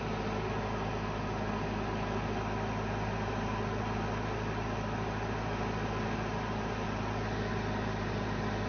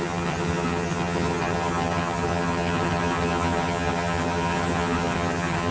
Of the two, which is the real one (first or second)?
first